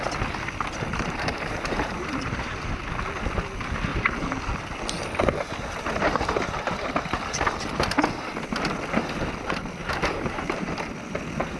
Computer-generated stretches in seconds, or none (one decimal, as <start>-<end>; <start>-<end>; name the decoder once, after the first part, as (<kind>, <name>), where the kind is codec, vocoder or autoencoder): 0.9-2.8 (vocoder, BigVGAN v2); 3.9-4.4; 9.8-10.9